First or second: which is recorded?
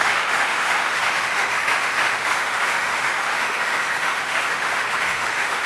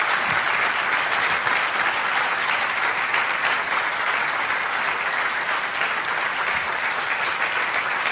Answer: second